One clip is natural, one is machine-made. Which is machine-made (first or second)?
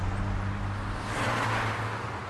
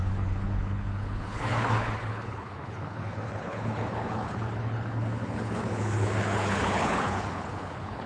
second